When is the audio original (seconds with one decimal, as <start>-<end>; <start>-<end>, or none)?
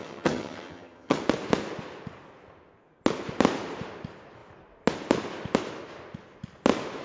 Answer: 1.2-7.0